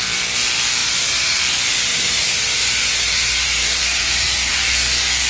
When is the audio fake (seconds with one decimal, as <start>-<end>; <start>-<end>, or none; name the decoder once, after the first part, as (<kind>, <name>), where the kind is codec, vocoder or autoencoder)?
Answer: 0.8-1.4 (vocoder, BigVGAN v2); 1.9-4.5